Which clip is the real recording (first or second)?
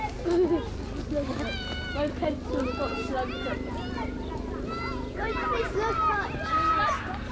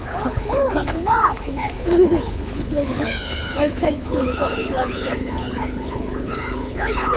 first